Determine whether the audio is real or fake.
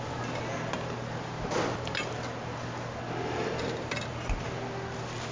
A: real